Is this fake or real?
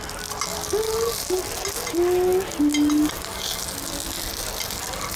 real